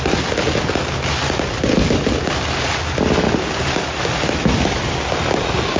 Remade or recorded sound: recorded